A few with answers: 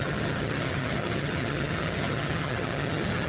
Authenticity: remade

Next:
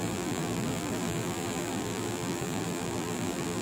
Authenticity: remade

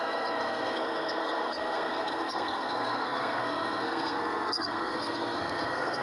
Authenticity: remade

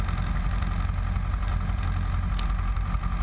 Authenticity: recorded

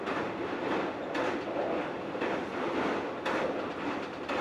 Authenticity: recorded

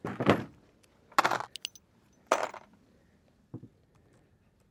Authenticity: recorded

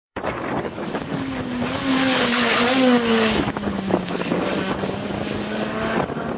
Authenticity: remade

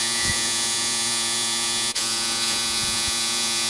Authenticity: remade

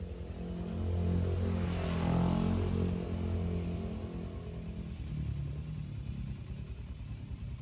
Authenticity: recorded